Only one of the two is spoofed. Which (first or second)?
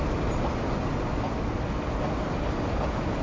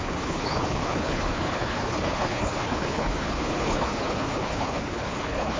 second